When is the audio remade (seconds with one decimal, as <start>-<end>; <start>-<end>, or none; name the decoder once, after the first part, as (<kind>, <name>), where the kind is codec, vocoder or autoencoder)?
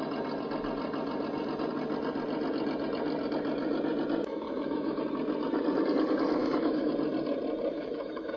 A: 4.2-5.0 (autoencoder, DAC-VAE); 6.4-6.9; 7.7-8.4